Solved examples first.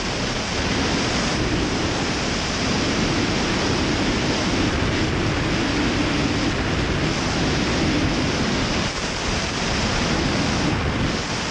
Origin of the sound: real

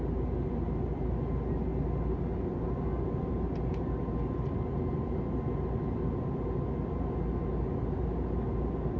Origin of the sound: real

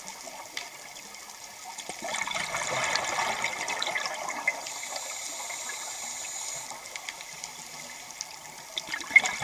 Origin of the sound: real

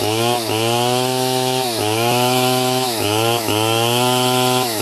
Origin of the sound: fake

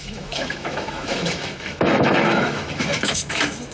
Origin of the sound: fake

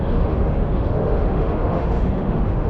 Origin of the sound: fake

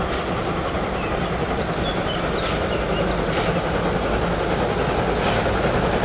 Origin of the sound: real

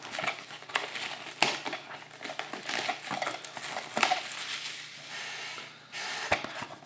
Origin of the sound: real